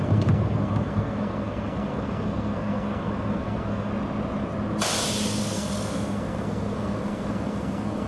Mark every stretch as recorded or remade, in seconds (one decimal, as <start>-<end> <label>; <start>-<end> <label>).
0.0-3.9 remade; 3.9-5.4 recorded; 5.4-8.1 remade